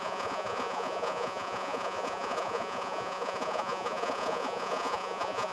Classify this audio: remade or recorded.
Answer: remade